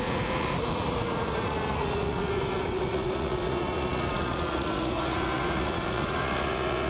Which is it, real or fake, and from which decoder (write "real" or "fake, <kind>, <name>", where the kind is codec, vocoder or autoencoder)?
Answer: fake, vocoder, Vocos